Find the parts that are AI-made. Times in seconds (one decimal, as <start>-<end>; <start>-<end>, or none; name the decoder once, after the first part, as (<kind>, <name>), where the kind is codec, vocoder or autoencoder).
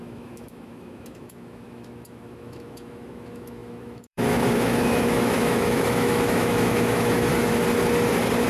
0.0-7.3 (autoencoder, DAC-VAE)